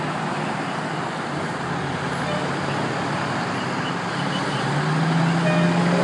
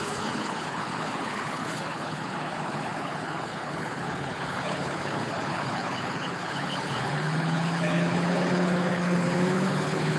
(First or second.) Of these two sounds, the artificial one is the second